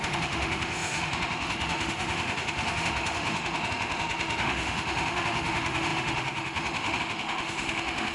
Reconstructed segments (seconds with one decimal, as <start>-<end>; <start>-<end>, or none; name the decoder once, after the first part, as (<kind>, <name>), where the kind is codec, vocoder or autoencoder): 0.0-8.1 (autoencoder, DAC-VAE)

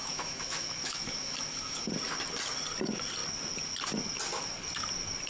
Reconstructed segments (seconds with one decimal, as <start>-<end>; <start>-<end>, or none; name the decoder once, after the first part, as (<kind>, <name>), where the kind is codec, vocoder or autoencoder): 0.0-1.9 (autoencoder, DAC-VAE)

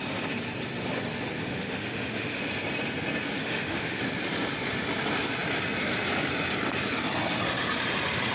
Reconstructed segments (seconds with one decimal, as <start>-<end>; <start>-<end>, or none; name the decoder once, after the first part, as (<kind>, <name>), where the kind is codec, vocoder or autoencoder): 1.4-2.4 (autoencoder, DAC-VAE); 3.4-4.0